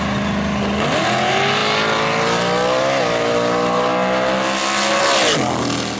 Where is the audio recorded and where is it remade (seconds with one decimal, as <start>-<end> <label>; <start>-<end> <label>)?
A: 0.0-6.0 recorded